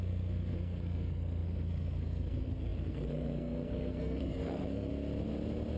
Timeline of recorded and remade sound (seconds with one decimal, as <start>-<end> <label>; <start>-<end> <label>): 0.0-4.9 remade; 4.9-5.8 recorded